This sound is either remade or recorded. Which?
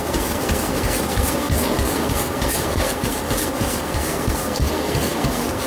remade